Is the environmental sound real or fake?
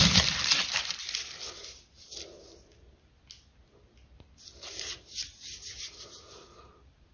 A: real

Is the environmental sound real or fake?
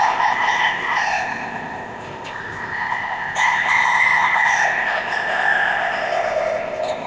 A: fake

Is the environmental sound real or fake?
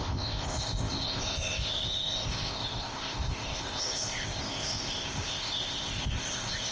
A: fake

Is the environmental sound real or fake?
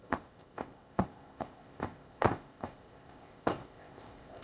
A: fake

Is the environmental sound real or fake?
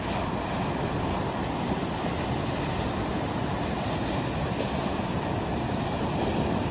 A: real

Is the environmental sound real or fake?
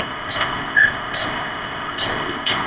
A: fake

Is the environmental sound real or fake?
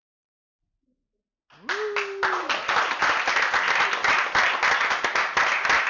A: real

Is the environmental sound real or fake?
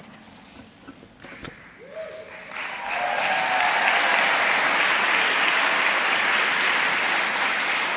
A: real